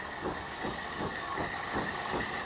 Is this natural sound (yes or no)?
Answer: yes